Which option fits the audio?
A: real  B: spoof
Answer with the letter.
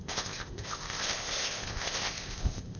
B